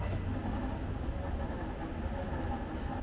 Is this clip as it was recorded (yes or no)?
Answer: yes